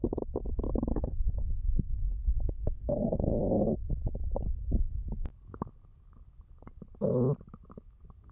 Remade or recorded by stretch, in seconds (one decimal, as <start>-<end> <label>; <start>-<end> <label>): 0.0-0.9 recorded; 0.9-3.3 remade; 3.3-8.3 recorded